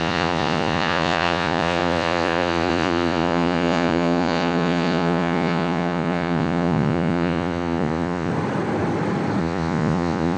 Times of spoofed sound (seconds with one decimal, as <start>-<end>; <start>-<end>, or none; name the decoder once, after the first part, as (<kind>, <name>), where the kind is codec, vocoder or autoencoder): 0.0-8.3 (vocoder, Vocos); 9.4-10.4